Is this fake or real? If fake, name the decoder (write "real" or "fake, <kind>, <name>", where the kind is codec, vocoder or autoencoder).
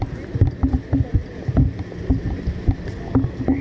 real